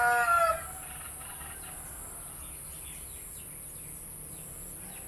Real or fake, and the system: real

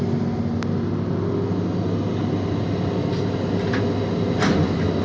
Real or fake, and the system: real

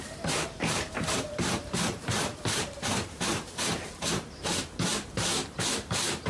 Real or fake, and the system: fake, vocoder, BigVGAN v2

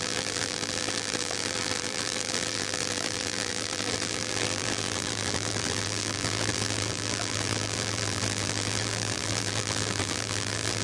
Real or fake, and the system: fake, vocoder, BigVGAN v2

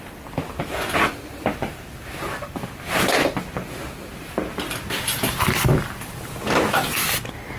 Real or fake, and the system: real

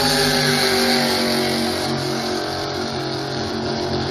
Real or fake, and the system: real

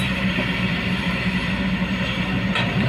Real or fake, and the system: fake, vocoder, BigVGAN v2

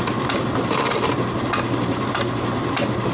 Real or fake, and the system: real